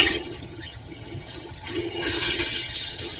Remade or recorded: remade